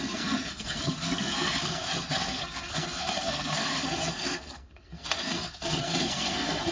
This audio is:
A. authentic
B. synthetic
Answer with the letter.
B